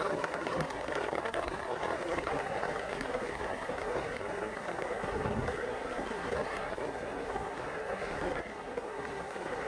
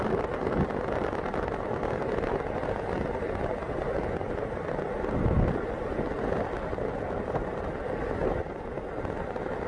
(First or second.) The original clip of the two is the second